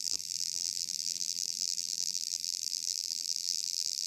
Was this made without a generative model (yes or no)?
no